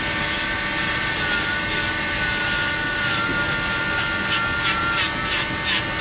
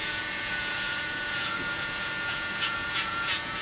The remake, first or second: second